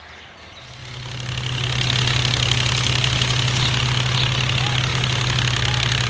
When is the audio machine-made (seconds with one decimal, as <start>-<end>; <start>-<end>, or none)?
none